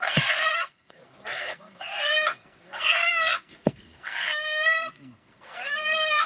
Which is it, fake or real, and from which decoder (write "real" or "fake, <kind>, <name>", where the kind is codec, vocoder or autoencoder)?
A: fake, codec, SNAC